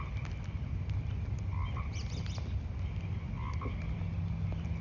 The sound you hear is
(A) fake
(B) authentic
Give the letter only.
B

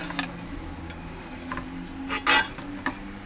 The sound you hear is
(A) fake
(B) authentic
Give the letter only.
B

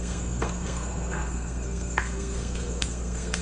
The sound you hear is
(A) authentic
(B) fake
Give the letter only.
B